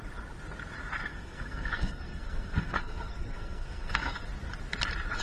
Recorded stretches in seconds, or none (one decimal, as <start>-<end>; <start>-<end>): 0.0-1.1; 4.2-5.2